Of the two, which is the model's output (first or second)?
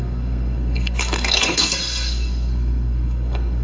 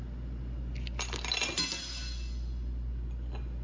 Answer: first